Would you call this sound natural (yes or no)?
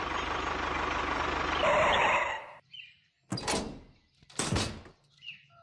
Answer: yes